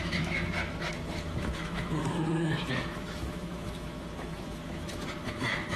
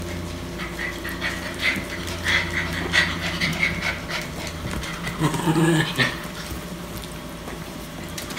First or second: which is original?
second